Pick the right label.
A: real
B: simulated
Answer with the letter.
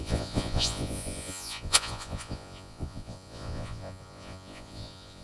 B